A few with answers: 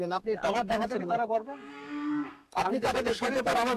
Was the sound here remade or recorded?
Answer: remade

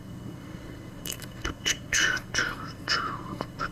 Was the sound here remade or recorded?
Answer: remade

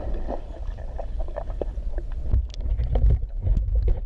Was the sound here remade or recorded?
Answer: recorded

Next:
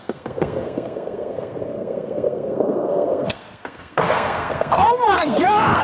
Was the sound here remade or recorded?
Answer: remade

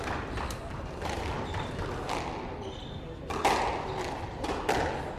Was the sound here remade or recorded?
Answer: recorded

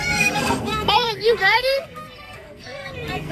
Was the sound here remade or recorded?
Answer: remade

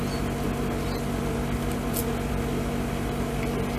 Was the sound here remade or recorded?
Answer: recorded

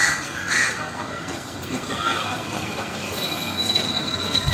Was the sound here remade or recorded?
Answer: remade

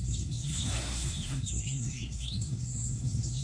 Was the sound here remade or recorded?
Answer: remade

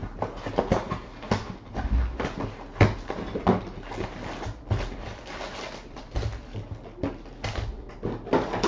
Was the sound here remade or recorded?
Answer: recorded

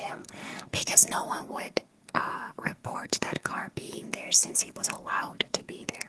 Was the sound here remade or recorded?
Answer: remade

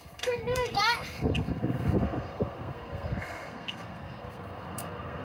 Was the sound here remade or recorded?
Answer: remade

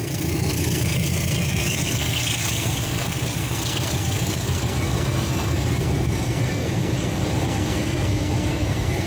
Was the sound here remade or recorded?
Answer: remade